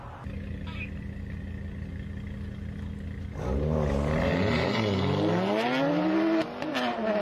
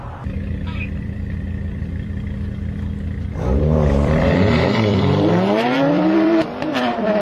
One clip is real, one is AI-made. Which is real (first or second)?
first